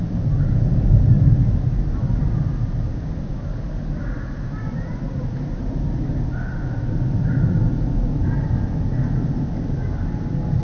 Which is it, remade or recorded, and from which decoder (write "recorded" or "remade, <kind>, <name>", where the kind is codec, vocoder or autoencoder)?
recorded